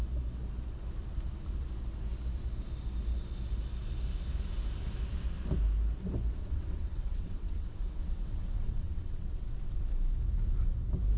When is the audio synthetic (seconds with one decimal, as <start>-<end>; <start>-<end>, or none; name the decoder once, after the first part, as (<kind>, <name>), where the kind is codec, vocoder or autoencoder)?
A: 6.4-9.8 (vocoder, WaveNeXt)